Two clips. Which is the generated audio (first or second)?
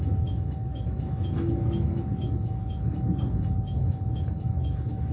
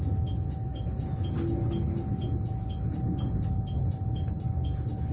first